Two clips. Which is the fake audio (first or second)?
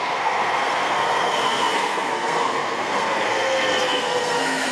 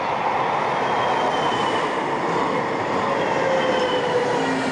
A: first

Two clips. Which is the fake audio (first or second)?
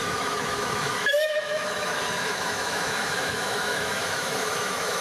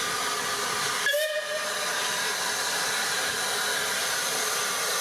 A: first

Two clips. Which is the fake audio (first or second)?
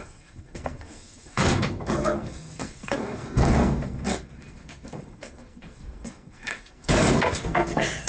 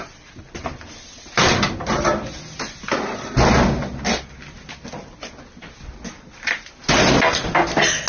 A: first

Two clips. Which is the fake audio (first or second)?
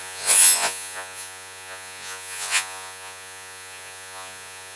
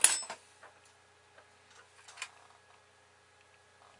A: first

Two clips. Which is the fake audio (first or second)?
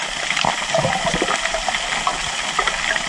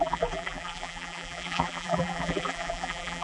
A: second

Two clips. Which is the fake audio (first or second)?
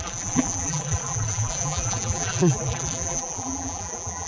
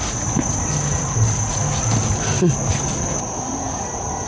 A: first